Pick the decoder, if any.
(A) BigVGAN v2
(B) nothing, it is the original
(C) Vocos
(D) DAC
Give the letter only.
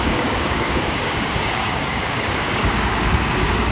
D